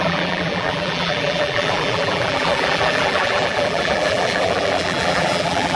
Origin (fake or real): fake